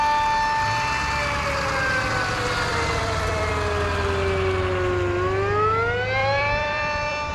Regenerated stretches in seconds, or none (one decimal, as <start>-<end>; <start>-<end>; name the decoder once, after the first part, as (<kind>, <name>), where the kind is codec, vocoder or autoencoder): 2.7-3.5 (vocoder, BigVGAN v2); 6.2-7.3